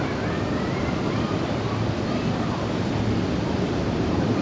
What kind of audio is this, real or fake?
real